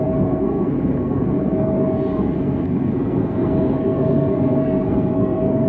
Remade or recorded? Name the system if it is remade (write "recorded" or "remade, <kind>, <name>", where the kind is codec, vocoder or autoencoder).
remade, codec, SNAC